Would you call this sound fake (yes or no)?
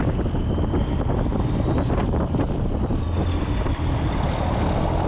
no